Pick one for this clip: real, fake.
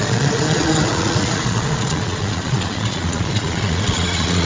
fake